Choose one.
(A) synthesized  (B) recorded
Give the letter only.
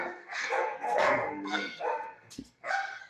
A